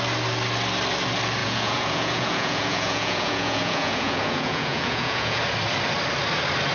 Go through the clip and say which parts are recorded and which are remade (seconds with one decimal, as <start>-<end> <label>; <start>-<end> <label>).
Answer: 0.0-1.4 recorded; 1.4-5.4 remade; 5.4-6.7 recorded